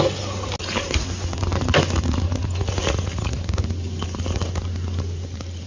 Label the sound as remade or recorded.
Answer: recorded